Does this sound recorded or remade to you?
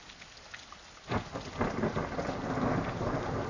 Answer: recorded